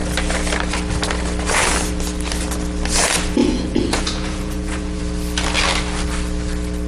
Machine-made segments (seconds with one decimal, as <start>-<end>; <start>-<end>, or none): 3.4-5.0